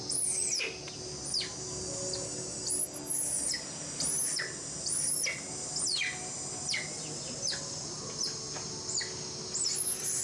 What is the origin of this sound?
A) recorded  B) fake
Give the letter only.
A